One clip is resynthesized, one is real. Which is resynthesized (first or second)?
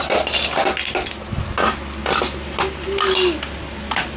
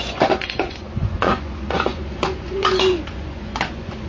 second